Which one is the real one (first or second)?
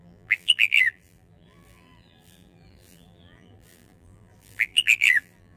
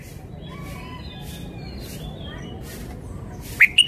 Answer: second